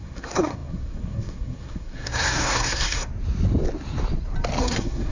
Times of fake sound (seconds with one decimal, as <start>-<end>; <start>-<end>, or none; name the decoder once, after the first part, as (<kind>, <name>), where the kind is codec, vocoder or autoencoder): 0.0-3.1 (codec, SNAC); 4.6-5.1